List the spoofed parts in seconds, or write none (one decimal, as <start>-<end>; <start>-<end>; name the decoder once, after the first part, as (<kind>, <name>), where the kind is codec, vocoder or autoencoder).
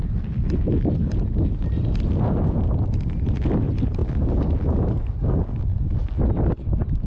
none